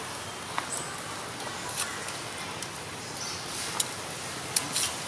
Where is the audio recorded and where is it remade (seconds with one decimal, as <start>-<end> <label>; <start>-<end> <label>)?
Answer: 0.0-5.1 recorded

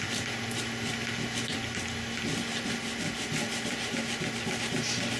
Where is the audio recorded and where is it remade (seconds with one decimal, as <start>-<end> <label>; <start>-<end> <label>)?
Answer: 0.0-5.2 recorded

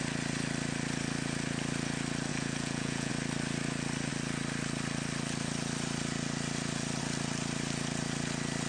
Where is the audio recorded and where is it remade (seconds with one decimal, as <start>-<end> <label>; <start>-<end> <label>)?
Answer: 0.0-2.3 recorded; 2.3-3.1 remade; 3.1-8.7 recorded

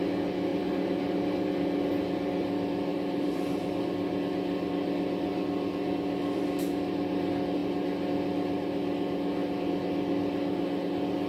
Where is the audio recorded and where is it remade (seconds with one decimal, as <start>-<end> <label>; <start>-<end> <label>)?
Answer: 0.0-0.5 recorded; 0.5-1.5 remade; 1.5-2.9 recorded; 2.9-3.8 remade; 3.8-11.3 recorded

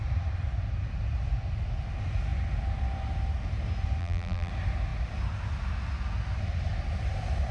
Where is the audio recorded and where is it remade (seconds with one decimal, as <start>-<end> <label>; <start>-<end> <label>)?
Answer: 0.0-4.0 recorded; 4.0-4.5 remade; 4.5-7.5 recorded

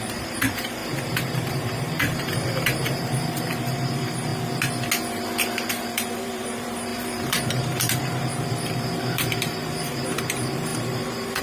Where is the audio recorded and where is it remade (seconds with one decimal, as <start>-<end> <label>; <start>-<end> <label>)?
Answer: 0.0-0.8 remade; 0.8-1.5 recorded; 1.5-4.3 remade; 4.3-5.7 recorded; 5.7-11.4 remade

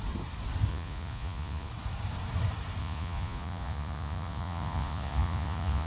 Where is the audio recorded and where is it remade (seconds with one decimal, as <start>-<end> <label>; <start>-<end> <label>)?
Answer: 0.0-0.7 recorded; 0.7-1.7 remade; 1.7-2.8 recorded; 2.8-5.9 remade

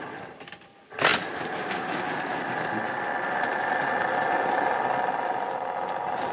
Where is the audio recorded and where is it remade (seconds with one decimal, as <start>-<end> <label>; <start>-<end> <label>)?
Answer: 0.0-2.3 remade; 2.3-3.5 recorded; 3.5-6.3 remade